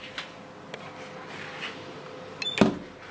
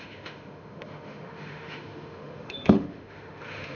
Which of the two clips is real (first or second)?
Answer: first